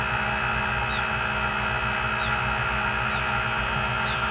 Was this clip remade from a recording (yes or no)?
no